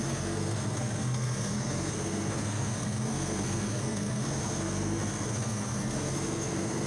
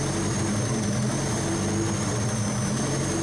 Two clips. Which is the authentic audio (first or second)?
second